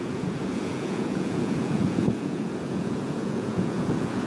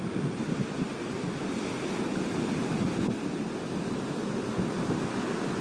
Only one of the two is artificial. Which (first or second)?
first